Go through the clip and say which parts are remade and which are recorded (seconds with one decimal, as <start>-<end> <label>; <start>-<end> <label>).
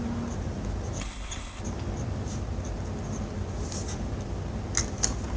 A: 0.0-1.0 recorded; 1.0-1.6 remade; 1.6-5.4 recorded